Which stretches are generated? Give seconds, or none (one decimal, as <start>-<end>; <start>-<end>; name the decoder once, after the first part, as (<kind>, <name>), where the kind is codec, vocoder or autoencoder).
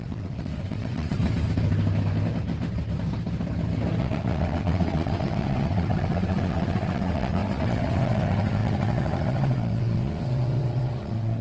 0.0-1.2 (vocoder, WaveNeXt); 4.0-11.4